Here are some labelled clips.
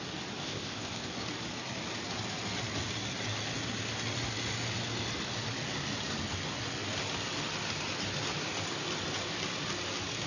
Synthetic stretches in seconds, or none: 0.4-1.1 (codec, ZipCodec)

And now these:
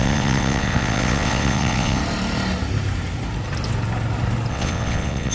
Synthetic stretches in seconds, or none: 0.0-2.0 (vocoder, WaveNeXt); 4.5-5.3

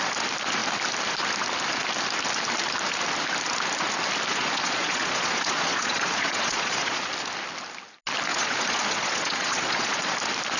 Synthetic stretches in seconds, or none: 4.3-7.1 (vocoder, Vocos); 8.3-10.1

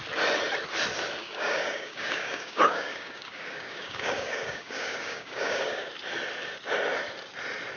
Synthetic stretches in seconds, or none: 1.2-5.9 (codec, DAC)